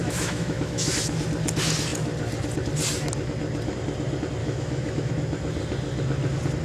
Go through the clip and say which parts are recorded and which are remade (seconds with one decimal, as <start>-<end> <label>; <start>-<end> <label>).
0.0-0.9 remade; 0.9-4.4 recorded; 4.4-5.1 remade; 5.1-6.6 recorded